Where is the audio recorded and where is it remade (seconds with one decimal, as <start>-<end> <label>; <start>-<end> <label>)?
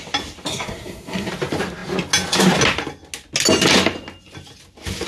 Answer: 0.0-0.5 recorded; 0.5-1.3 remade; 1.3-5.1 recorded